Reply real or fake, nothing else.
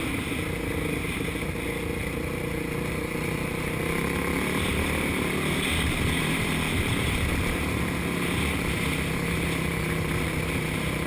real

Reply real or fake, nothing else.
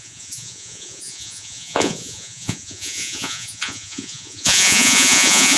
fake